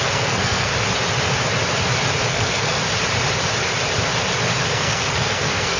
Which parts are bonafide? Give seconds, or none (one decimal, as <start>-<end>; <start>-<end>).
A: 0.7-2.3; 2.8-4.7